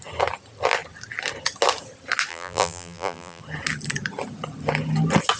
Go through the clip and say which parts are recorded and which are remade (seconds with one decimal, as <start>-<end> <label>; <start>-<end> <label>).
0.0-2.3 recorded; 2.3-3.4 remade; 3.4-5.4 recorded